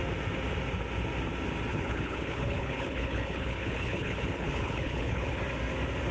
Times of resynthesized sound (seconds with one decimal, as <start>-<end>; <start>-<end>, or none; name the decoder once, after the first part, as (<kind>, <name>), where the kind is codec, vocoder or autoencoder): 1.7-5.4 (codec, HILCodec)